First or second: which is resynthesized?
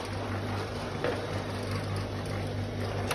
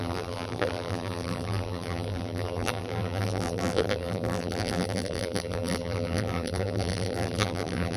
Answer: second